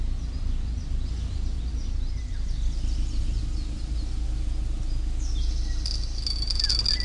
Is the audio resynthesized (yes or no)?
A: no